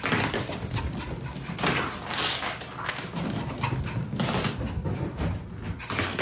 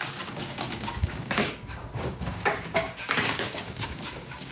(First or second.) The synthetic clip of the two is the second